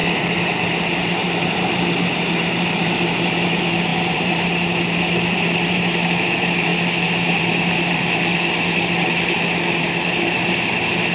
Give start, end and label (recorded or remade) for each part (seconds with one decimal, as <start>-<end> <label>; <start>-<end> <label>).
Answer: 0.0-1.0 recorded; 1.0-6.7 remade; 6.7-7.4 recorded; 7.4-8.3 remade; 8.3-9.8 recorded; 9.8-11.1 remade

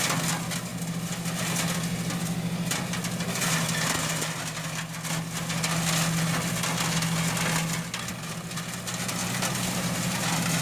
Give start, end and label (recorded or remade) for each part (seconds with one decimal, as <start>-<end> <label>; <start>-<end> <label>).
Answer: 0.0-9.2 recorded; 9.2-10.2 remade; 10.2-10.6 recorded

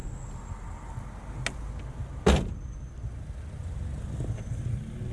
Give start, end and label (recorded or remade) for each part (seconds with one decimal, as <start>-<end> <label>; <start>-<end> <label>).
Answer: 0.0-5.1 recorded

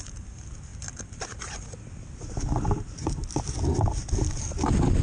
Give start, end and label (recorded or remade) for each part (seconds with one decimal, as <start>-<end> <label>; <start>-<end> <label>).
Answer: 0.0-0.7 recorded; 0.7-3.4 remade; 3.4-5.0 recorded

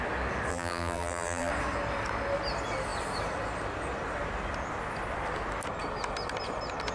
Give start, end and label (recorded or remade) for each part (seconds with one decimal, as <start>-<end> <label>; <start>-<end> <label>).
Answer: 0.0-0.5 recorded; 0.5-1.5 remade; 1.5-6.9 recorded

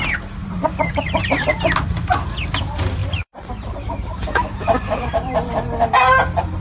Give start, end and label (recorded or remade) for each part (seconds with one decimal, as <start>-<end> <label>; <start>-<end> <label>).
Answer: 0.0-0.4 recorded; 0.4-1.2 remade; 1.2-3.0 recorded; 3.0-5.5 remade; 5.5-6.6 recorded

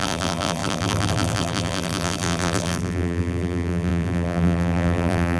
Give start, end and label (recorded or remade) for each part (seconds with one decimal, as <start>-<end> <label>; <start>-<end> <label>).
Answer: 0.0-5.4 remade